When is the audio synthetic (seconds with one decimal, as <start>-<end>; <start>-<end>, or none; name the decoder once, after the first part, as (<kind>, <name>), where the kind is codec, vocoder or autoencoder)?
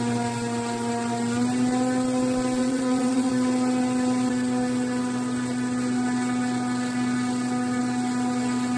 2.6-3.3 (vocoder, Vocos)